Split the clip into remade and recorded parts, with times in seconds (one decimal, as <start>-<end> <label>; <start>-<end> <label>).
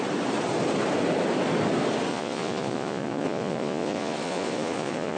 0.0-2.1 recorded; 2.1-5.2 remade